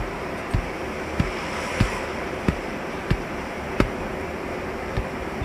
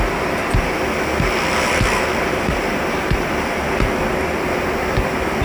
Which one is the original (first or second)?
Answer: second